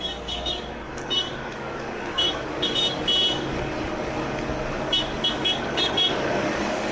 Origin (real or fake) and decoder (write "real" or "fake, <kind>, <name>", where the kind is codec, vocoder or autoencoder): fake, codec, DAC